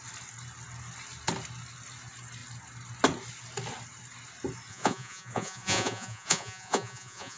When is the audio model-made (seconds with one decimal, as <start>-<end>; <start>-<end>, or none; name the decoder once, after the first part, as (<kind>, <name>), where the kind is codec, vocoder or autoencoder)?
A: 4.7-7.4 (vocoder, Vocos)